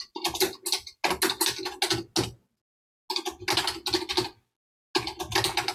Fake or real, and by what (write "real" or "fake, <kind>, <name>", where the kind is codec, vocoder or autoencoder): real